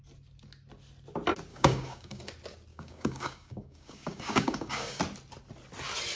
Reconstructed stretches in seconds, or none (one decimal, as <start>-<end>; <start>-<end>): 1.5-2.2; 2.7-5.0